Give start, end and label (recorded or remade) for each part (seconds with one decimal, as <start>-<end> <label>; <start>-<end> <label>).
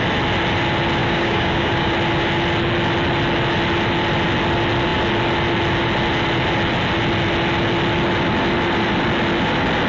0.0-1.0 recorded; 1.0-1.9 remade; 1.9-9.9 recorded